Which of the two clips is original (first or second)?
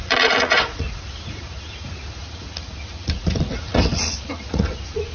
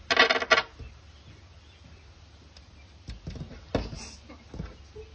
second